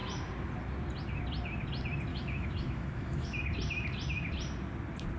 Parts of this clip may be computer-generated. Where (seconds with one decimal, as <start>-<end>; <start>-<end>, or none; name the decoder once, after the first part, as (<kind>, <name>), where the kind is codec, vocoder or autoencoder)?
2.1-3.4 (autoencoder, DAC-VAE)